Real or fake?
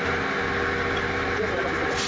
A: real